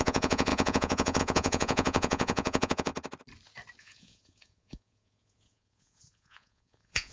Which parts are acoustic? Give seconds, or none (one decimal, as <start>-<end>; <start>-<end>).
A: 2.9-3.8